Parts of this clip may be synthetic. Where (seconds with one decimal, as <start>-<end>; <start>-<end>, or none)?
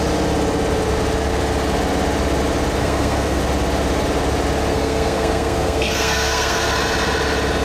2.8-3.4; 4.7-6.7